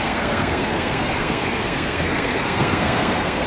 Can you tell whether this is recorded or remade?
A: remade